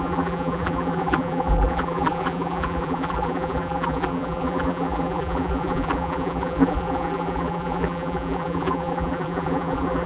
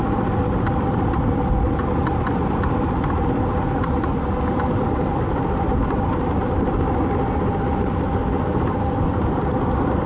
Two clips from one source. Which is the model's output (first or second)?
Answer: first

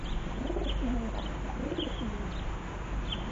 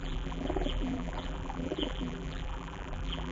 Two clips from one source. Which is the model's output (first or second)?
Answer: second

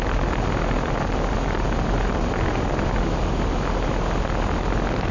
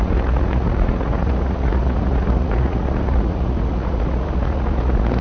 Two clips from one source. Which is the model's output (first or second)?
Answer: second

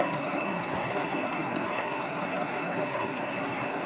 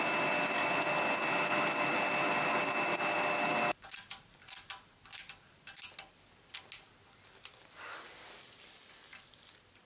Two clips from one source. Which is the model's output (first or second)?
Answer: first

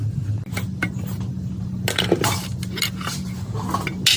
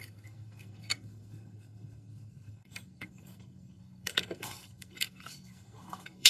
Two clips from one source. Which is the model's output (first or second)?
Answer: second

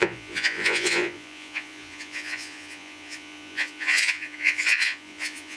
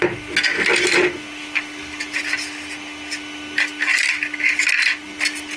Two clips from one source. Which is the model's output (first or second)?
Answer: first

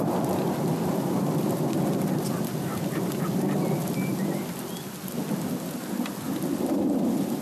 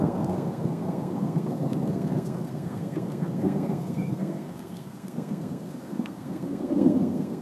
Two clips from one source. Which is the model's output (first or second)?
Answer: second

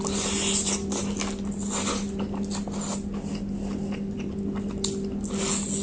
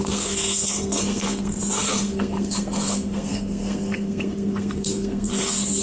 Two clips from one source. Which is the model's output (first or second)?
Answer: second